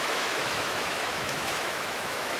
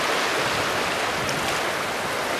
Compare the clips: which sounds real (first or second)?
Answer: second